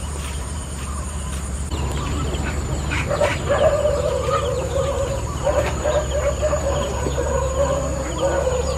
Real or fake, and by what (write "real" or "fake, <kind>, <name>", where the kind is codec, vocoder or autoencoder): fake, vocoder, BigVGAN v2